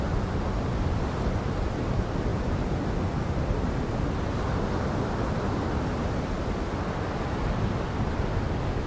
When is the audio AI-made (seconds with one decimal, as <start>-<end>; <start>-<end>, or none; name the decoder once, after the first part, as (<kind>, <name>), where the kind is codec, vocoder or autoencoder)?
none